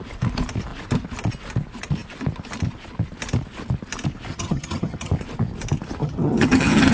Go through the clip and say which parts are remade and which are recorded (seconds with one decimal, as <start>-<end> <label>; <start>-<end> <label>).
0.0-4.3 recorded; 4.3-5.1 remade; 5.1-6.0 recorded; 6.0-6.9 remade

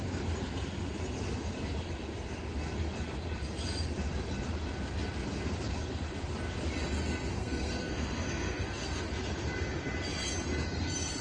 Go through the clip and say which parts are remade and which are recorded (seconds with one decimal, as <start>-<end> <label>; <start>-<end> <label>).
0.0-7.4 recorded; 7.4-9.0 remade; 9.0-11.2 recorded

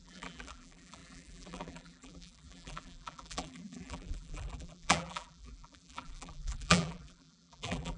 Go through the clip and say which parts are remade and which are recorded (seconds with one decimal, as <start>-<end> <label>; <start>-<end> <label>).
0.0-8.0 remade

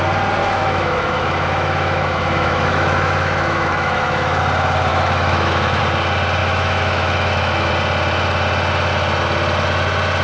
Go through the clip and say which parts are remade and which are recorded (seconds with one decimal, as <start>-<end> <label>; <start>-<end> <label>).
0.0-0.4 recorded; 0.4-4.4 remade; 4.4-4.9 recorded; 4.9-5.8 remade; 5.8-6.4 recorded; 6.4-7.7 remade; 7.7-10.2 recorded

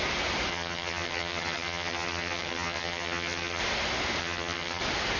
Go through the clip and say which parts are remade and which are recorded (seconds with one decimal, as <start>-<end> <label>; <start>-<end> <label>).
0.0-0.5 recorded; 0.5-3.6 remade; 3.6-4.2 recorded; 4.2-4.8 remade; 4.8-5.2 recorded

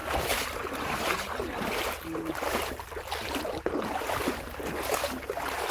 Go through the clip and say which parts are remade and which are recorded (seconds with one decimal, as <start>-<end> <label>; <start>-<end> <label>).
0.0-3.0 remade; 3.0-5.7 recorded